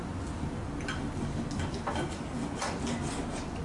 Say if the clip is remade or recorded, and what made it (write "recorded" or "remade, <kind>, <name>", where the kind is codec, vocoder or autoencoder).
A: recorded